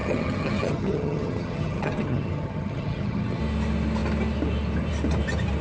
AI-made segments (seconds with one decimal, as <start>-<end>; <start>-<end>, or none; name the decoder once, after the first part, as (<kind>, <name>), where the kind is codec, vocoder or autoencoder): 0.0-3.4 (vocoder, HiFi-GAN)